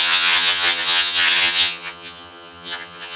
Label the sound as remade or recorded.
remade